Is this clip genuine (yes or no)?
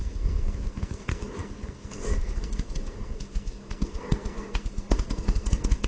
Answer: no